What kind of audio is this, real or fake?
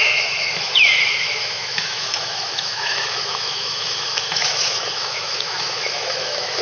fake